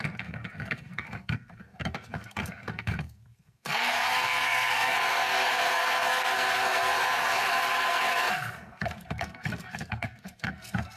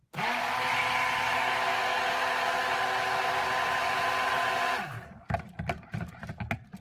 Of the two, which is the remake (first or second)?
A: first